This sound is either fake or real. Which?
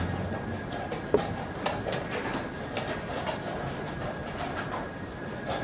real